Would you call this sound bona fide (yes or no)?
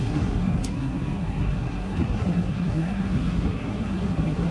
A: no